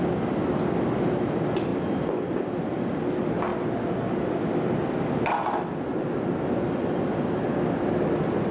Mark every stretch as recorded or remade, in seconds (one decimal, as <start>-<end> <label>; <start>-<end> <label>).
0.0-8.5 recorded